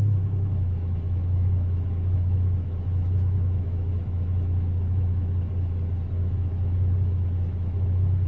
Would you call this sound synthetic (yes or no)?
yes